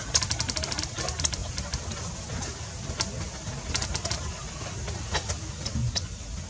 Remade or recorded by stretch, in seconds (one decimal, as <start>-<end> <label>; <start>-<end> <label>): 0.0-6.5 recorded